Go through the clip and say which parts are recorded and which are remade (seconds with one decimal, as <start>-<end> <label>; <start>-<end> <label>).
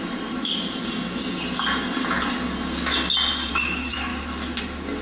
0.0-0.5 remade; 0.5-3.5 recorded; 3.5-4.1 remade; 4.1-4.6 recorded; 4.6-5.0 remade